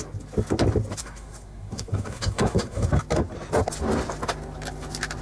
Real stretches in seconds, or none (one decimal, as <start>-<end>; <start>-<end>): 0.0-1.0; 2.9-5.2